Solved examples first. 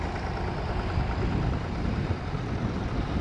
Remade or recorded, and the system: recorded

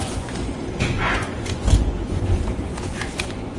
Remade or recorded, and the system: remade, vocoder, Vocos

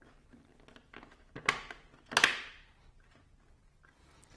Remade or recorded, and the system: recorded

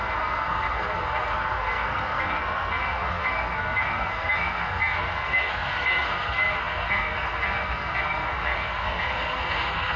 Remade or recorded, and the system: remade, codec, SNAC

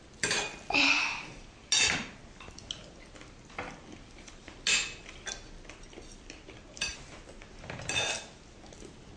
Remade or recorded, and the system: recorded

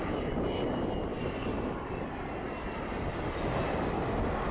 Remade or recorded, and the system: recorded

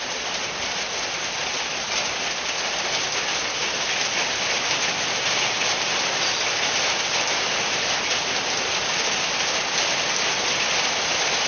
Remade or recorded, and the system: recorded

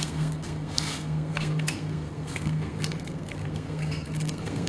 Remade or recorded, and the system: remade, codec, SNAC